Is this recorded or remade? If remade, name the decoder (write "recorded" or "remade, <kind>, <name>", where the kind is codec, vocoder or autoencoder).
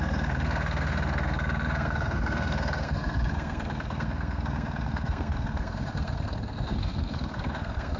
remade, codec, SNAC